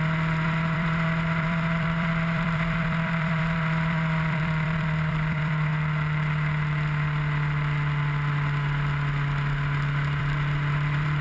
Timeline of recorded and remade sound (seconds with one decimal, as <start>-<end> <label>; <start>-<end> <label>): 0.0-5.7 remade; 5.7-10.2 recorded; 10.2-11.2 remade